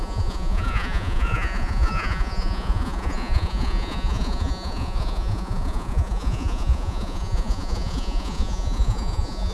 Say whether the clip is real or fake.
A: fake